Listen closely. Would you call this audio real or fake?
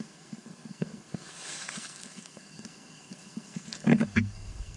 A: fake